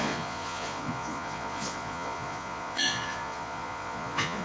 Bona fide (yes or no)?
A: no